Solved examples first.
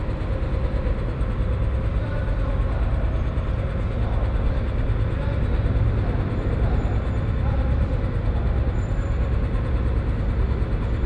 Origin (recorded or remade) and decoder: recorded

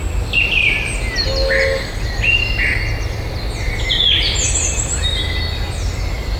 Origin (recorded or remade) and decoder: recorded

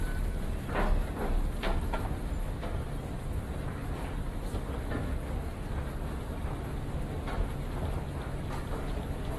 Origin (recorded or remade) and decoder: recorded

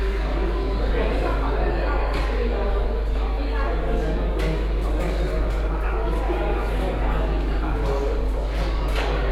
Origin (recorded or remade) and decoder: remade, codec, DAC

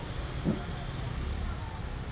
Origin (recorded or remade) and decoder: recorded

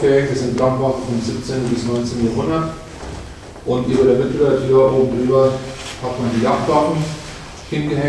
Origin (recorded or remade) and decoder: recorded